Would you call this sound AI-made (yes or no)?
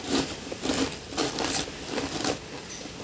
no